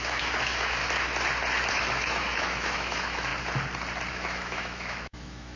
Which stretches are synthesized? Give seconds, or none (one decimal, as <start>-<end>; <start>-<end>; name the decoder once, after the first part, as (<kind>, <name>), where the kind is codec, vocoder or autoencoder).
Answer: 0.0-0.8 (autoencoder, DAC-VAE); 1.7-3.3; 4.1-5.6